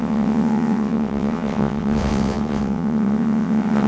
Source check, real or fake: fake